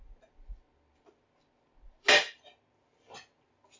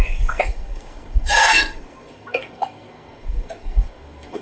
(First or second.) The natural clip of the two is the first